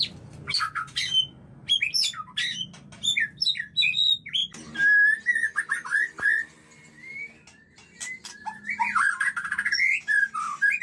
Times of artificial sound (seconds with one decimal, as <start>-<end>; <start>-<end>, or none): none